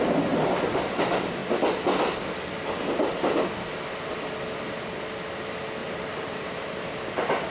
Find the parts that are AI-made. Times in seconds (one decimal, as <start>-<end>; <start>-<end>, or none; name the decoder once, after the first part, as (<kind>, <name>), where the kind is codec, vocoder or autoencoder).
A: 5.8-6.6 (vocoder, BigVGAN v2)